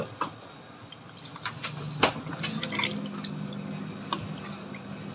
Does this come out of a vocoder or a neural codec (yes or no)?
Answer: no